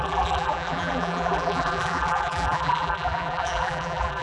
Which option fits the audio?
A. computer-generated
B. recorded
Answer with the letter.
A